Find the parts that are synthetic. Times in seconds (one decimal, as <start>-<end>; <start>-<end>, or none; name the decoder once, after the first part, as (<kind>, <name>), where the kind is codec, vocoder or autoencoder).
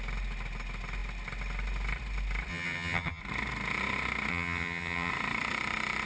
2.5-3.2 (vocoder, HiFi-GAN); 4.3-5.1